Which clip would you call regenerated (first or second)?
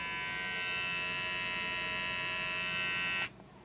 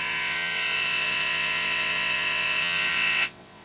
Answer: second